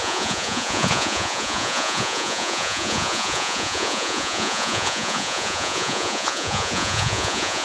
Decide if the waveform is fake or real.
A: fake